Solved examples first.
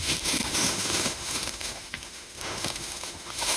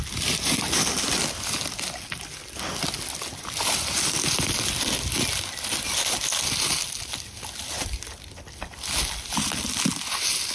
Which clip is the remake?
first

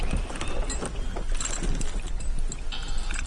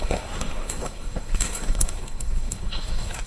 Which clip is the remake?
second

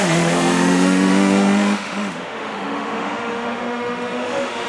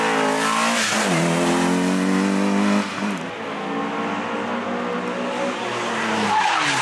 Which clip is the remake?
first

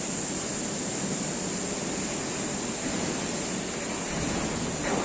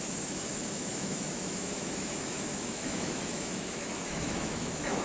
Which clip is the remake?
second